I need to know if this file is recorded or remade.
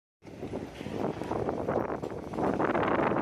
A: recorded